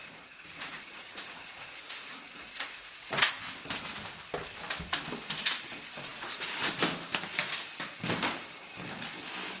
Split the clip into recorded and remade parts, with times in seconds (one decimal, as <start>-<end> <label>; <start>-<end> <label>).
0.0-3.3 remade; 3.3-6.1 recorded; 6.1-6.7 remade; 6.7-9.6 recorded